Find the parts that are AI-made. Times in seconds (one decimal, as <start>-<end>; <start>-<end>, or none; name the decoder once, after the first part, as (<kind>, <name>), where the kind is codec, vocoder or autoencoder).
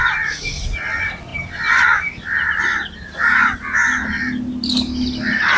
none